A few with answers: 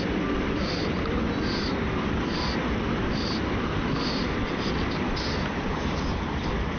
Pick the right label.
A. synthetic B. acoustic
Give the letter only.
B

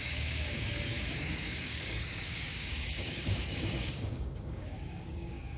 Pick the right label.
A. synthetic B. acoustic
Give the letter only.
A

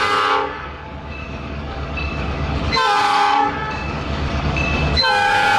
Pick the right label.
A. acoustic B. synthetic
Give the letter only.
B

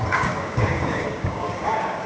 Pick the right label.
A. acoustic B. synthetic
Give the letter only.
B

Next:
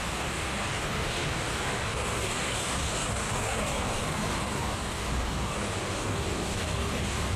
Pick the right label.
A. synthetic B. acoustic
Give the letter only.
A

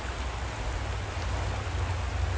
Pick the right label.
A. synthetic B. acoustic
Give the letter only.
B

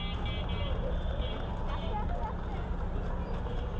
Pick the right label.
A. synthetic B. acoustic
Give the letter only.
B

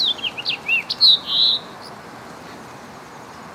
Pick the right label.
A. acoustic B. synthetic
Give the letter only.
A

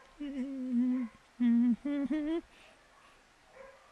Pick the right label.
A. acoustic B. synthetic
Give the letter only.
A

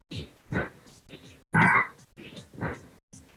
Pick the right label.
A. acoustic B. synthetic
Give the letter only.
A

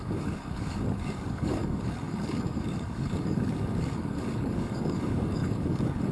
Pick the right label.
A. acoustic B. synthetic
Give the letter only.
B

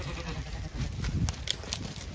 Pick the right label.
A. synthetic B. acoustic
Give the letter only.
B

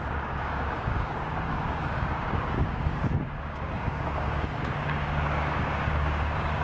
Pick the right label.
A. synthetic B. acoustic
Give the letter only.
A